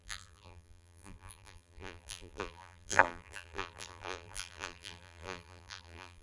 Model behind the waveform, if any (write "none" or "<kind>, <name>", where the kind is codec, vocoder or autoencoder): vocoder, BigVGAN v2